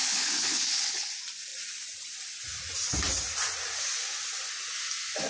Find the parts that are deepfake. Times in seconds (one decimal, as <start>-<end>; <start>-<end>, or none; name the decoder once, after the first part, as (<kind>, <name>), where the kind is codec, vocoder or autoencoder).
0.0-1.1 (codec, HILCodec)